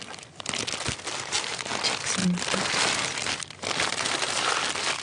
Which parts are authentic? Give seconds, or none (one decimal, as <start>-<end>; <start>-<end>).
0.0-5.0